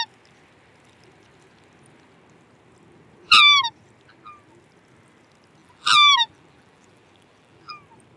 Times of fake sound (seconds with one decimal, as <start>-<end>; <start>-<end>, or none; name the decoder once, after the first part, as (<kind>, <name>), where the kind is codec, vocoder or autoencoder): 5.6-7.7 (vocoder, BigVGAN v2)